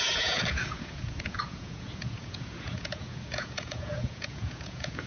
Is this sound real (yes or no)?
no